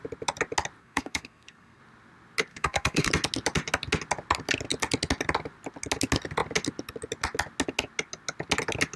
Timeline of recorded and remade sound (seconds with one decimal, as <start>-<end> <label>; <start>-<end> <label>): 0.0-0.8 recorded; 0.8-1.8 remade; 1.8-2.5 recorded; 2.5-3.1 remade; 3.1-9.0 recorded